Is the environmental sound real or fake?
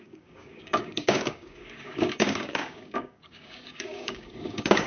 fake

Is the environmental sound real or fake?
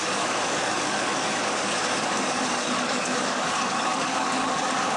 fake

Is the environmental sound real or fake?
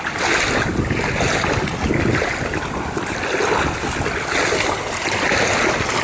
real